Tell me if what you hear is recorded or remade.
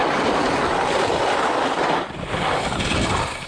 recorded